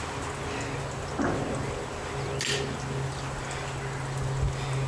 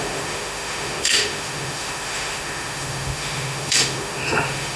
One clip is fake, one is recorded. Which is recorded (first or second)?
first